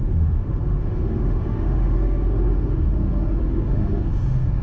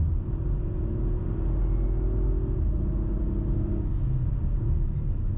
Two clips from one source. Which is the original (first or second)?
second